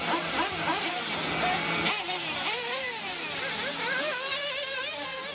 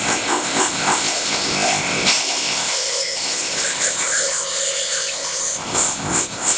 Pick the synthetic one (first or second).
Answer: second